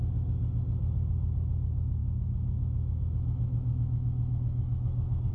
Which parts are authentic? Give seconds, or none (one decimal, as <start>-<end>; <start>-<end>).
0.0-2.0